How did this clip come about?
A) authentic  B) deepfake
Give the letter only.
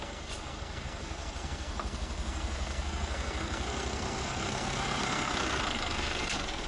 B